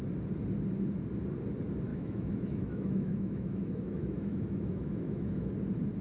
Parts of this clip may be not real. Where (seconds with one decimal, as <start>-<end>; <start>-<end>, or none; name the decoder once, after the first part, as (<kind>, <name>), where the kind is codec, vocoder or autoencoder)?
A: 1.9-5.5 (autoencoder, DAC-VAE)